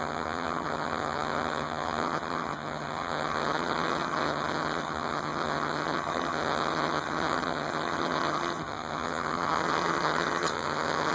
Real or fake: fake